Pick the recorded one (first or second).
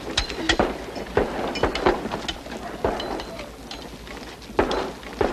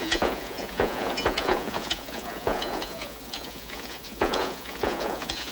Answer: first